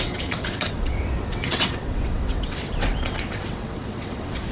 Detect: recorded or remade remade